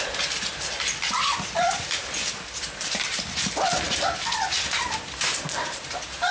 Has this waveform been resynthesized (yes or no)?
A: no